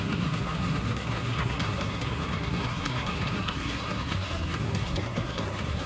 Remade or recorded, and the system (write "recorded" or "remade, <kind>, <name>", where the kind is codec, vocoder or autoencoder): remade, codec, SNAC